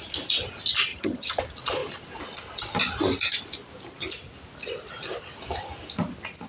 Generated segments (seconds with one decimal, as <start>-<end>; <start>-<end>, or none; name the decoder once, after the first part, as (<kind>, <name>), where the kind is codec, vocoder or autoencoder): 0.9-1.4 (vocoder, HiFi-GAN)